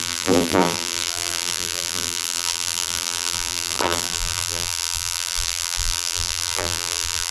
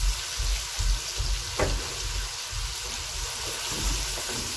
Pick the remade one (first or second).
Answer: first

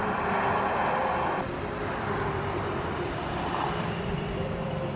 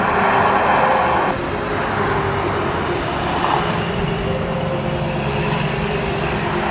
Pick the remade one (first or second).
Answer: first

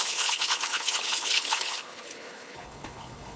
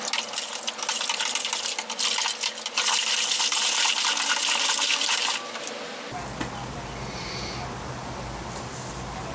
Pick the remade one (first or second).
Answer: first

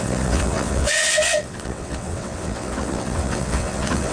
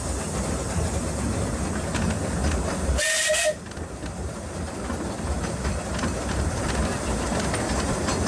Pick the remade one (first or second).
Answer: first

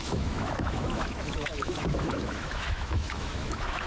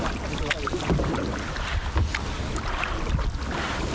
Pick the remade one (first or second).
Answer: first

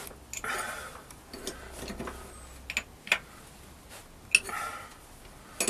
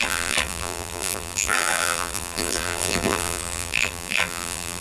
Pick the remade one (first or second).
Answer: second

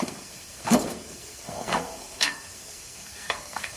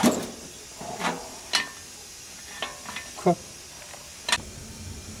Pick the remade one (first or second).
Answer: first